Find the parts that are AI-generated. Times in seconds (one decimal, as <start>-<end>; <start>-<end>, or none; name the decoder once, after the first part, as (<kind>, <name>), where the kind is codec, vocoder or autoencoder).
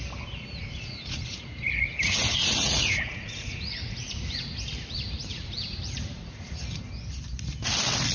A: 0.6-4.4 (vocoder, Vocos); 5.3-6.6